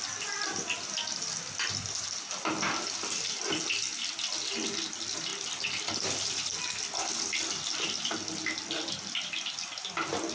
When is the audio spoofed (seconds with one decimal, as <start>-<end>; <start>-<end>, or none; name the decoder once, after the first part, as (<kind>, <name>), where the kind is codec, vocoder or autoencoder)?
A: none